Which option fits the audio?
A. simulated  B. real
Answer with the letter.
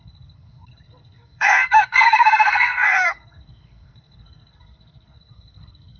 A